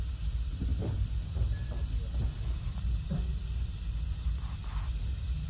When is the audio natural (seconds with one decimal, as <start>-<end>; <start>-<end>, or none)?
0.0-5.5